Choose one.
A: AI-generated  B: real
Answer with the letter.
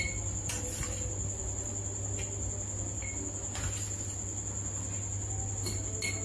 B